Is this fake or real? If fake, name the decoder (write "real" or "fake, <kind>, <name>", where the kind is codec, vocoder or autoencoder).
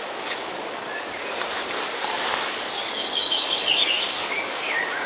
fake, codec, DAC